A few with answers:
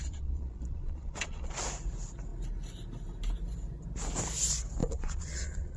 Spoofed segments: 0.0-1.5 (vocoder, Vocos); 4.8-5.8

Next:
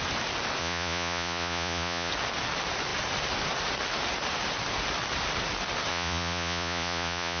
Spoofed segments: 0.6-2.1 (vocoder, Vocos); 5.9-7.4

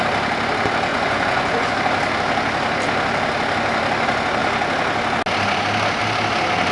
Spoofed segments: 0.9-1.7 (vocoder, Vocos)

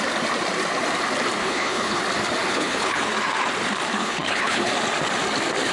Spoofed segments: 1.4-2.0 (codec, HILCodec); 2.5-3.0; 4.0-4.7